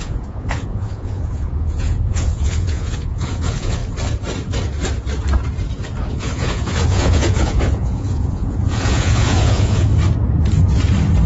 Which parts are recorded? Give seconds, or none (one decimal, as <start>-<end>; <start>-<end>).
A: 3.8-6.1; 9.9-11.3